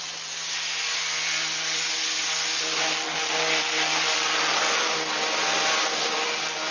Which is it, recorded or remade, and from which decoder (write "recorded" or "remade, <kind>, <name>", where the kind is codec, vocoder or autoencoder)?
recorded